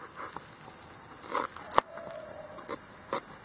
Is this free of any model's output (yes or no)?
yes